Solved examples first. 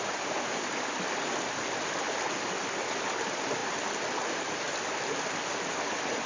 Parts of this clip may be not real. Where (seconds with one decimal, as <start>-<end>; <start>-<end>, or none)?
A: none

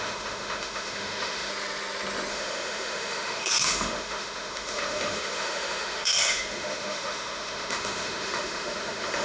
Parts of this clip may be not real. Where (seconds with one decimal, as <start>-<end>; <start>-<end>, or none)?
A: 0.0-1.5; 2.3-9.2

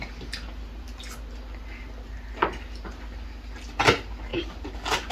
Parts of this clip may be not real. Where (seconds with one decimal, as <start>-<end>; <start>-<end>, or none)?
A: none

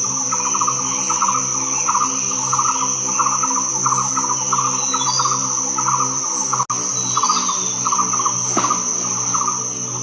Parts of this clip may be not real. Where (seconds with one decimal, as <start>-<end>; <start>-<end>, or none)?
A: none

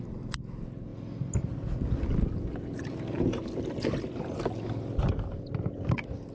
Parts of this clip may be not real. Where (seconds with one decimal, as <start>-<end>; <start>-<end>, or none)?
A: none